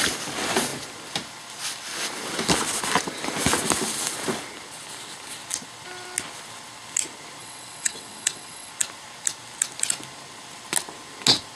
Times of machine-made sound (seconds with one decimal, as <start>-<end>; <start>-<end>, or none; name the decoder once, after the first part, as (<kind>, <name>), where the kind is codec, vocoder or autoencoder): 7.4-8.7 (vocoder, WaveNeXt)